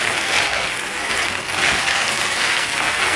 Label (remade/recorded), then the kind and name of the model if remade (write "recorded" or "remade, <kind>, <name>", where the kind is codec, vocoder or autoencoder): remade, codec, SNAC